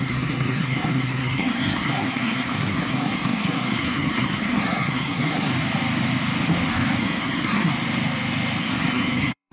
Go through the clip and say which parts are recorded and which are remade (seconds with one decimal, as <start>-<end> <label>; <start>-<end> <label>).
0.0-5.5 remade; 5.5-7.0 recorded; 7.0-7.7 remade; 7.7-8.6 recorded; 8.6-9.5 remade